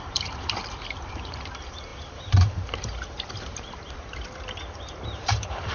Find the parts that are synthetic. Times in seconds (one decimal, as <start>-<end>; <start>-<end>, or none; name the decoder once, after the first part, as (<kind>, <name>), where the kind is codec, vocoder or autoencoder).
0.0-0.6 (vocoder, BigVGAN v2); 1.1-5.7